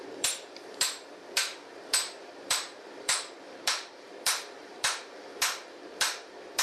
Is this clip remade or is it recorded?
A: remade